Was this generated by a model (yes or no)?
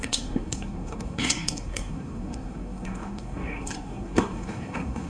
yes